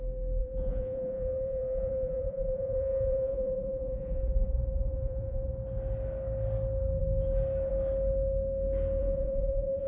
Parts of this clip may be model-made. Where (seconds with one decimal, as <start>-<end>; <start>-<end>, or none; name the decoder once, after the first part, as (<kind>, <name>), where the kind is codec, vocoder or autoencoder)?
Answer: 0.4-5.5 (vocoder, Vocos); 9.0-9.9